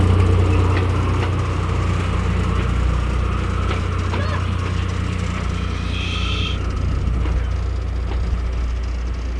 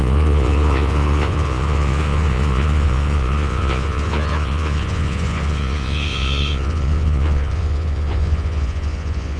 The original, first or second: first